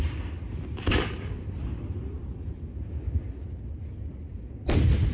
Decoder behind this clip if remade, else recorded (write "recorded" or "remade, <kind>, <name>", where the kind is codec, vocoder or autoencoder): recorded